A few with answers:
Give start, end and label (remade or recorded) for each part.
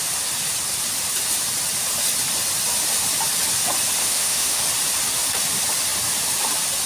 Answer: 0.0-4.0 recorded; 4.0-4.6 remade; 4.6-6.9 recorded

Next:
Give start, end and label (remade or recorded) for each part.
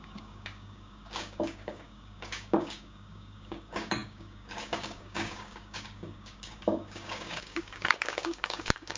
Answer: 0.0-9.0 remade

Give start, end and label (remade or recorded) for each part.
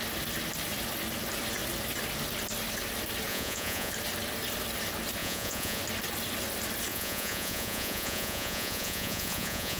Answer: 0.0-3.3 recorded; 3.3-3.9 remade; 3.9-5.2 recorded; 5.2-5.8 remade; 5.8-6.9 recorded; 6.9-9.8 remade